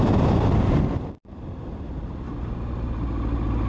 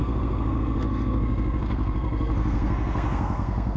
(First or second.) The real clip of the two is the first